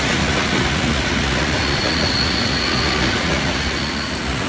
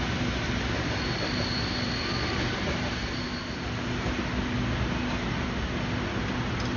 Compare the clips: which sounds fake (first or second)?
first